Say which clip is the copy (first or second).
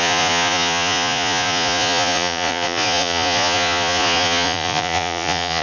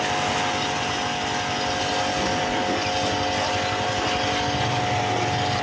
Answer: first